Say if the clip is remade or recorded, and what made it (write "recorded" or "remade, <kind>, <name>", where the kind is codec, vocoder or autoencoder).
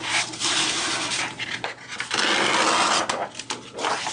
recorded